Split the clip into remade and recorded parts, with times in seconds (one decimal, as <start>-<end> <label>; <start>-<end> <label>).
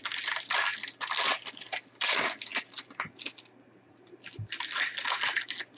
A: 0.0-5.8 recorded